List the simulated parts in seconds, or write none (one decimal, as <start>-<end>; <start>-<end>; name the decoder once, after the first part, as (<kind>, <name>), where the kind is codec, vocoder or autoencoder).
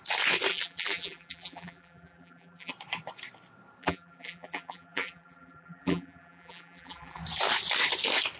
0.5-2.7 (vocoder, BigVGAN v2); 3.8-7.2